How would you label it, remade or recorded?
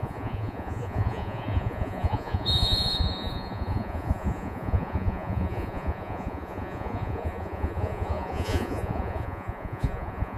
remade